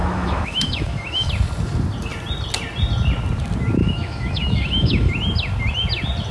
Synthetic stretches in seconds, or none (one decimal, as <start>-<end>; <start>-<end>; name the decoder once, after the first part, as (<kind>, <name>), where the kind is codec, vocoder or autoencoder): 0.0-1.3 (autoencoder, DAC-VAE); 3.8-5.1